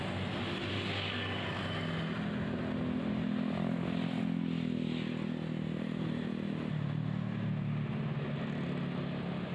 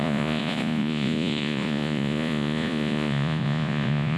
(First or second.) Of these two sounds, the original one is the first